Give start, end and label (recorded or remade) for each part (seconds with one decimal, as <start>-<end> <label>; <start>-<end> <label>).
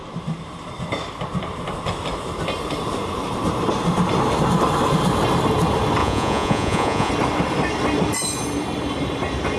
0.0-6.0 recorded; 6.0-7.1 remade; 7.1-9.6 recorded